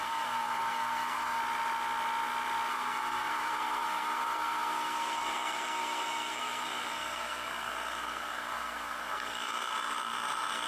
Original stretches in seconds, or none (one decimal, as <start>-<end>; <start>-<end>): 1.4-2.7